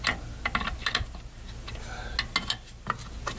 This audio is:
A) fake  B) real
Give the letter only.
B